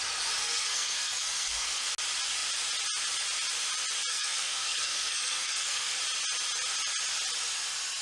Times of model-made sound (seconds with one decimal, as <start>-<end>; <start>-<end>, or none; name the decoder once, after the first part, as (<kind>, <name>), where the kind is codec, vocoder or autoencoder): 0.4-1.9 (codec, SNAC); 4.1-6.0